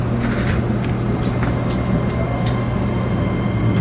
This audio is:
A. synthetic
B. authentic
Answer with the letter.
B